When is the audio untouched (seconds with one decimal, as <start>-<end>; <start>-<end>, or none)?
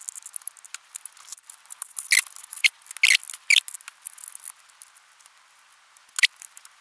0.0-6.8